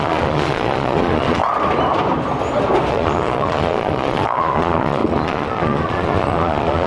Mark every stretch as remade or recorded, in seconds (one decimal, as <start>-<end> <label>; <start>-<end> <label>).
0.0-1.4 remade; 1.4-2.9 recorded; 2.9-6.9 remade